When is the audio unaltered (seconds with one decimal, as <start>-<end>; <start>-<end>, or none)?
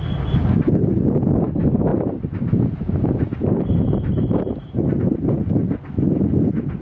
0.0-1.9; 5.0-6.8